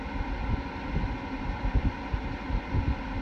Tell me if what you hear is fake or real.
real